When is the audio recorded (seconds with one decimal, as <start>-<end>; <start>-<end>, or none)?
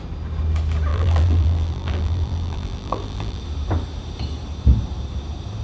0.0-0.9; 3.4-5.6